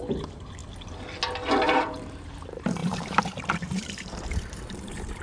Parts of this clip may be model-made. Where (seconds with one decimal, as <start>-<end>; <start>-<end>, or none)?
0.0-0.6; 1.5-5.2